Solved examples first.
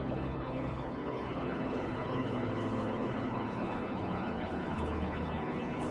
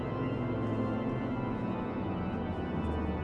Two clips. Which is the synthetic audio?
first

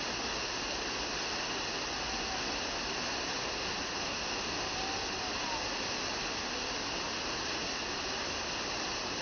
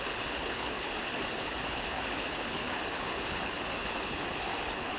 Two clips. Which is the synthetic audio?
second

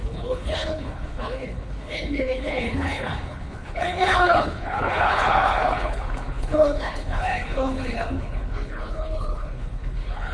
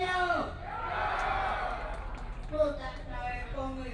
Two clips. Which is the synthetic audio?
first